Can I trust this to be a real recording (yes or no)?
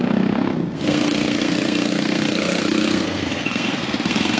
no